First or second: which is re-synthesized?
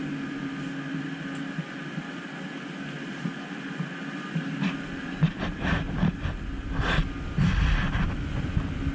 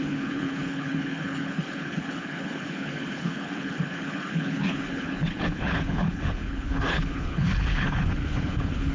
second